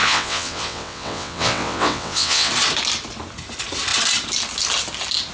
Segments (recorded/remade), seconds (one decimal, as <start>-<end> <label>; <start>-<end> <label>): 0.0-2.5 remade; 2.5-5.3 recorded